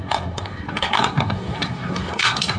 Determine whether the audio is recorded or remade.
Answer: remade